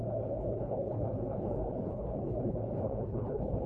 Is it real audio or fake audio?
fake